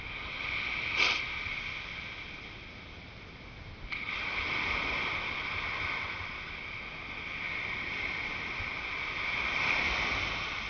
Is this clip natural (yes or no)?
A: yes